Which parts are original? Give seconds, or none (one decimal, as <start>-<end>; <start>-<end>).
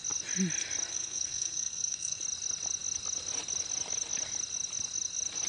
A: 0.0-0.9; 2.2-5.5